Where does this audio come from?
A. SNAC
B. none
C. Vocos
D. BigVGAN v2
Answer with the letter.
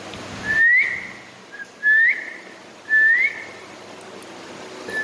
B